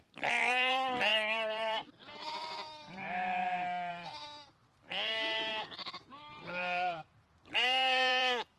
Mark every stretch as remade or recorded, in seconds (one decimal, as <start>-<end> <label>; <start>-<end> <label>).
0.0-5.5 remade; 5.5-6.1 recorded; 6.1-8.6 remade